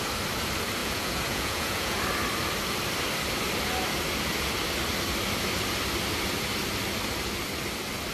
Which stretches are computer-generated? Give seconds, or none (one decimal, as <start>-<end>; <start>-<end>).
0.8-2.0